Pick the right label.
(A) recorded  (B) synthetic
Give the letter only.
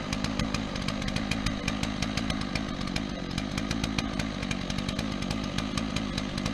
A